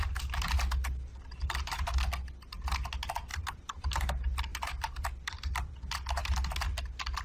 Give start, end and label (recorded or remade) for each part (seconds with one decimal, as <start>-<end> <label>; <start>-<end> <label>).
0.0-1.1 recorded; 1.1-1.9 remade; 1.9-3.3 recorded; 3.3-5.7 remade; 5.7-7.2 recorded